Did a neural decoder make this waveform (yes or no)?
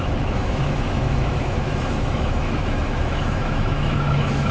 yes